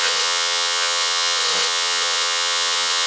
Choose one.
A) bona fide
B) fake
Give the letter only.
B